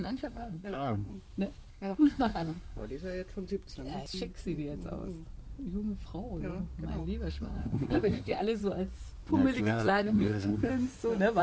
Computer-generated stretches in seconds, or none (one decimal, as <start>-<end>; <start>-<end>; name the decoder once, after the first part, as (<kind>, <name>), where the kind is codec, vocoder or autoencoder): 0.0-1.1 (codec, SNAC); 1.7-2.8; 7.3-8.6; 9.6-10.7